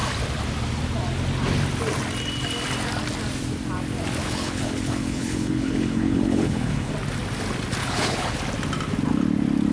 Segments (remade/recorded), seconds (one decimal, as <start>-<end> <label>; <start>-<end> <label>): 0.0-4.2 recorded; 4.2-6.9 remade; 6.9-7.8 recorded; 7.8-8.4 remade; 8.4-9.7 recorded